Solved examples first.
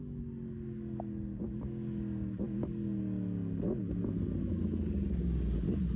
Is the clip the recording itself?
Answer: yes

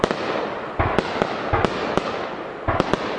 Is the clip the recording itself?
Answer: yes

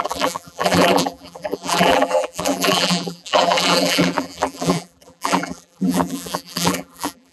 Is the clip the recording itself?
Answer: no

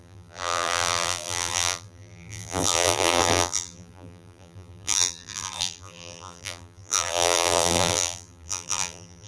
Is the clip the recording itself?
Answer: no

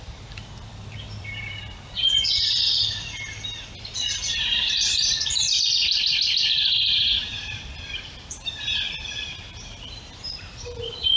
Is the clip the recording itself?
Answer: no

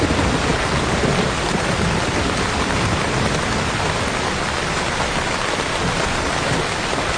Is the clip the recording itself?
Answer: yes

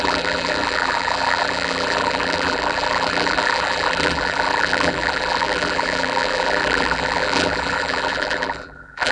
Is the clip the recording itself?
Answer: no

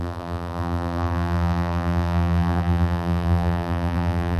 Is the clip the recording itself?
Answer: no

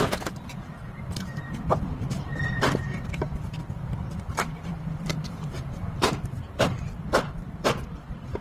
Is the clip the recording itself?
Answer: no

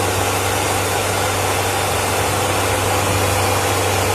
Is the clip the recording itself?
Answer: yes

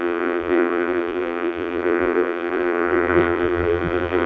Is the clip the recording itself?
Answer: no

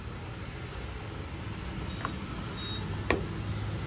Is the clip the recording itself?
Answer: yes